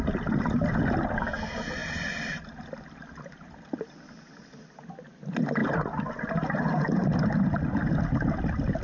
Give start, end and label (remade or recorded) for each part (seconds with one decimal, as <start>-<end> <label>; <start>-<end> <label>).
0.0-8.8 recorded